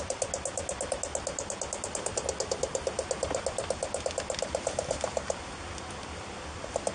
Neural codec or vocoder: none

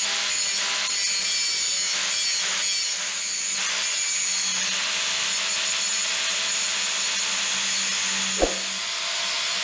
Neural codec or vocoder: none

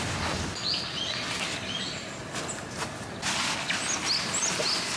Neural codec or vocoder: none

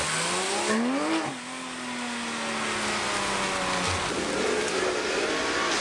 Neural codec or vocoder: none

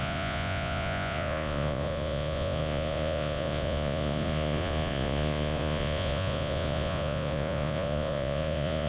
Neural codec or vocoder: vocoder, Vocos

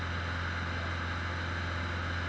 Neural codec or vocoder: none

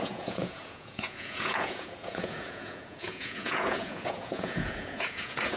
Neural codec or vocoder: vocoder, Vocos